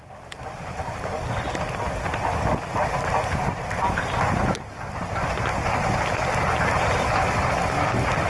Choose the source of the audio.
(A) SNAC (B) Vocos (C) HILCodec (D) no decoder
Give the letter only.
D